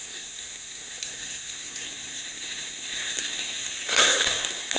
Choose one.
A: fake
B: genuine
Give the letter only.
A